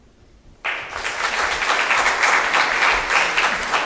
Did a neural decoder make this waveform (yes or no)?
no